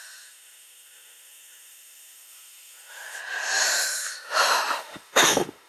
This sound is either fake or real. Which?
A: fake